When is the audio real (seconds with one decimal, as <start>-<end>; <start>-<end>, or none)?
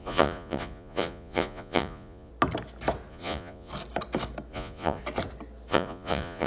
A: 2.3-3.1; 3.7-4.5; 5.0-5.7